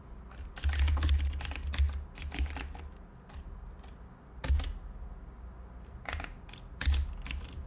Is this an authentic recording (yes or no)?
yes